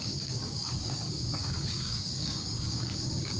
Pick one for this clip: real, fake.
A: fake